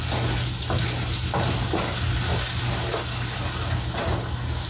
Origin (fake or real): real